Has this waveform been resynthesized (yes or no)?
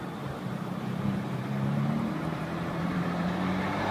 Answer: yes